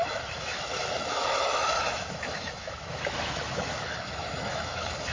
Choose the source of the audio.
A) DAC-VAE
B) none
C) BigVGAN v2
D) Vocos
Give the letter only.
A